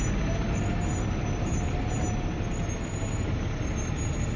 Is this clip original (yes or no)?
yes